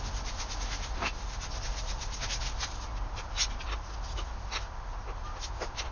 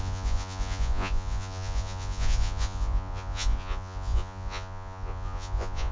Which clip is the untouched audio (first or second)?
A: first